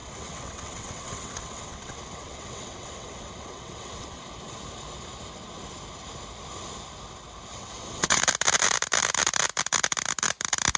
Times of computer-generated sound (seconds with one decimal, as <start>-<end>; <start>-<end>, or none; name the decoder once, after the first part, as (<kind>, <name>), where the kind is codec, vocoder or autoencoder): 0.0-4.2 (vocoder, WaveNeXt); 7.5-8.2